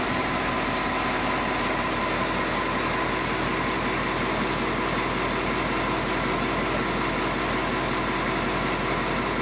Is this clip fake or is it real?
real